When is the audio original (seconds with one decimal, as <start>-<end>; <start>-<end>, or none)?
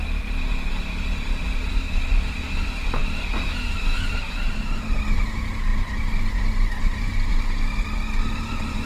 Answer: 0.0-8.9